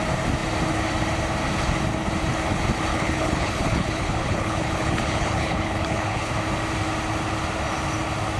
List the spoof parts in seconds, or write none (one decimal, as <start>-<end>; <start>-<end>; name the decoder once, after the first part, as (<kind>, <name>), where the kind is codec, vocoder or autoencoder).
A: 2.9-6.3 (codec, HILCodec)